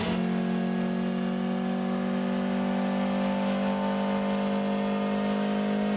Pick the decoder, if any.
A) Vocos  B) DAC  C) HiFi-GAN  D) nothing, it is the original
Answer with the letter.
D